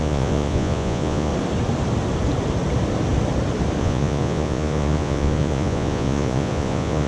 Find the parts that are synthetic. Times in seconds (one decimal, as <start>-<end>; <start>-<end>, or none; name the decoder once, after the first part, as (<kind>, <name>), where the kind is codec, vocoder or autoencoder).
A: 0.0-1.3 (vocoder, Vocos); 3.8-7.1